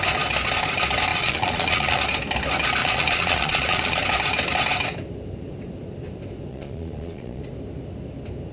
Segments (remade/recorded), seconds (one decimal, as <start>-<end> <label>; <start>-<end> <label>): 0.0-1.1 recorded; 1.1-2.0 remade; 2.0-2.8 recorded; 2.8-4.0 remade; 4.0-6.5 recorded; 6.5-7.4 remade; 7.4-8.5 recorded